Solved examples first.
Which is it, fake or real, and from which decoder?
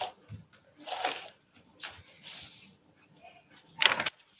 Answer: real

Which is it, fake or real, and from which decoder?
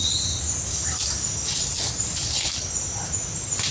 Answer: real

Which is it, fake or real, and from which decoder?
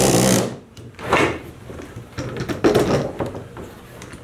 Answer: real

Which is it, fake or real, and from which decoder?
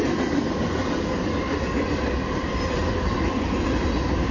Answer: real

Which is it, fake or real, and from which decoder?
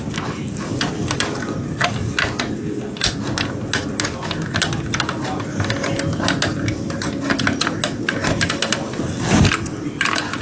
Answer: real